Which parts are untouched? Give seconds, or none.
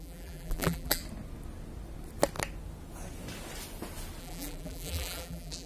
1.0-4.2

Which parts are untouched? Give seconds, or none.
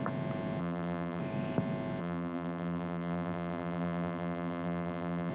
0.0-0.6; 1.2-2.0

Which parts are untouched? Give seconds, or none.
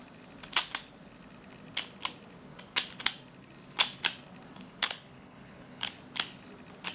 0.0-4.8; 5.9-6.9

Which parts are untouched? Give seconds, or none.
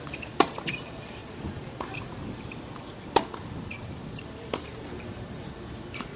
0.0-6.2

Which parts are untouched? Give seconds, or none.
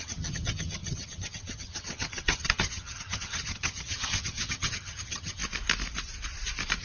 5.4-6.8